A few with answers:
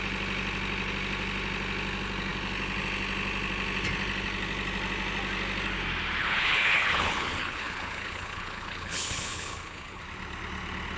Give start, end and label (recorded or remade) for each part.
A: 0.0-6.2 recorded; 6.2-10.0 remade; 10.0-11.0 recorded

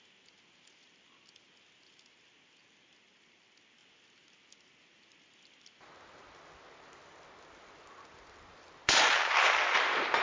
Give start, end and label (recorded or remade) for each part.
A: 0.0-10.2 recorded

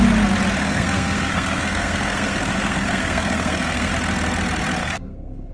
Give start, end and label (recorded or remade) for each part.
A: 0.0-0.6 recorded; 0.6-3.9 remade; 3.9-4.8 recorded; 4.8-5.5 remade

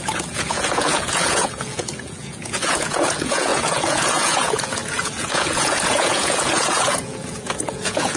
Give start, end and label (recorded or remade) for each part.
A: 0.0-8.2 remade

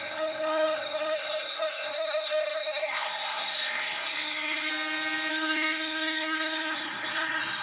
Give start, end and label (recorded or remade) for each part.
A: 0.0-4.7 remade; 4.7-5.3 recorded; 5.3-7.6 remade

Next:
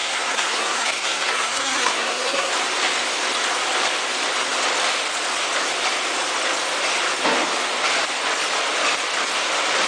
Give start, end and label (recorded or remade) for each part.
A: 0.0-2.5 remade; 2.5-9.9 recorded